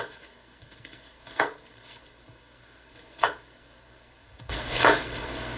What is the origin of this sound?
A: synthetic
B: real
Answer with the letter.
A